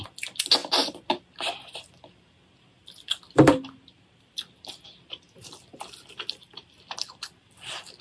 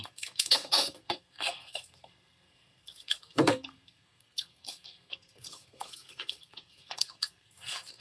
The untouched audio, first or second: first